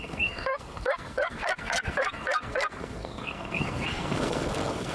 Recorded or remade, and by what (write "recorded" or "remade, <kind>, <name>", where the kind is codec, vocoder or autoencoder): remade, codec, SNAC